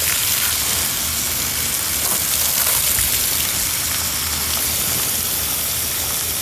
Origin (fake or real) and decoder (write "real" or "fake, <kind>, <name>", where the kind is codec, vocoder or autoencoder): real